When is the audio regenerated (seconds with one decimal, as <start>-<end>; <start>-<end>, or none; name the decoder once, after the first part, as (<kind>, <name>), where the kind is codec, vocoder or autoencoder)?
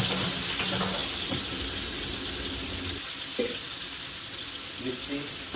none